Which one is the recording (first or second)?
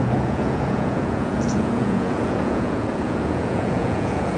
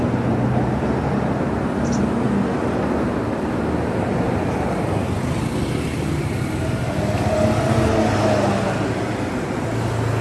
second